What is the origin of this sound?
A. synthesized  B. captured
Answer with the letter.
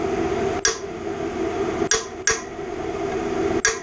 B